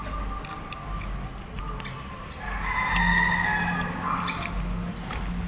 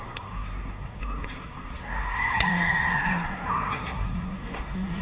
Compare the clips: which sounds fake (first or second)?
second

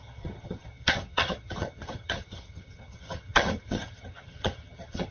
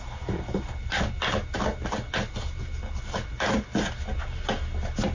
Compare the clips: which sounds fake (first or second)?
first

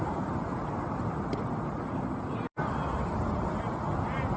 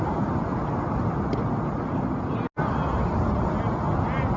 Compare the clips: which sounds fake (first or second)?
first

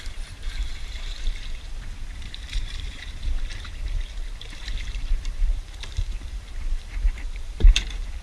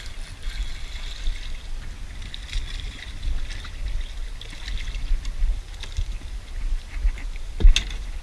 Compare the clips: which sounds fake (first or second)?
first